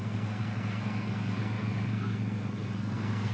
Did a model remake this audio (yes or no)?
yes